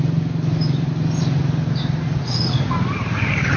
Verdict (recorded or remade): recorded